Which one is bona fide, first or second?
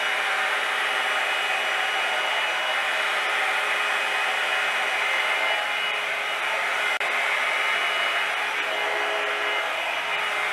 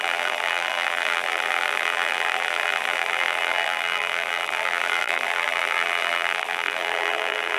first